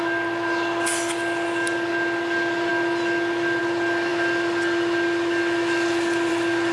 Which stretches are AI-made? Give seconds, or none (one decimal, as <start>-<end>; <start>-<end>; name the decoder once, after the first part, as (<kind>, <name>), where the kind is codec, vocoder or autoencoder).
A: none